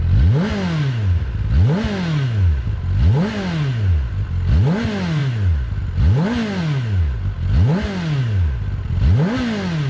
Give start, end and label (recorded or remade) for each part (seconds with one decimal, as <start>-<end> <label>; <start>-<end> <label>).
0.0-9.9 recorded